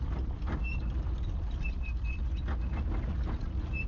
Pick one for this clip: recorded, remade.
remade